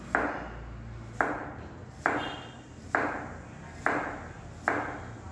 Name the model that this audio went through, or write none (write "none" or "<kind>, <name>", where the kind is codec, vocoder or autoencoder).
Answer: none